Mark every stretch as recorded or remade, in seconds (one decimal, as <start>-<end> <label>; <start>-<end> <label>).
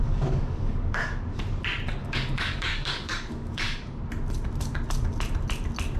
0.0-1.4 remade; 1.4-2.0 recorded; 2.0-4.0 remade; 4.0-6.0 recorded